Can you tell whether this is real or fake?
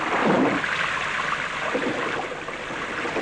real